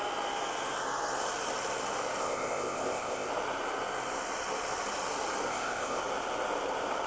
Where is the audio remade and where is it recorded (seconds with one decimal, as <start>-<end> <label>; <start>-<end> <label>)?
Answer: 0.0-2.2 recorded; 2.2-3.3 remade; 3.3-5.5 recorded; 5.5-6.0 remade; 6.0-7.1 recorded